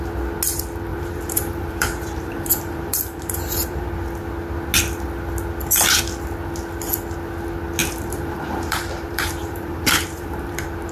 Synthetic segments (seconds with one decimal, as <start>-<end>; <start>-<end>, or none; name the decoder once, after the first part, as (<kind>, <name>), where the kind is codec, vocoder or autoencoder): 0.9-3.9 (vocoder, BigVGAN v2); 7.8-10.9